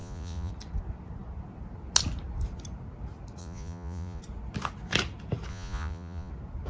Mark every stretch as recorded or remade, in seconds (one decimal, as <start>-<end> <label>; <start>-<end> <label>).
0.0-0.5 remade; 0.5-3.4 recorded; 3.4-4.2 remade; 4.2-5.5 recorded; 5.5-6.3 remade; 6.3-6.7 recorded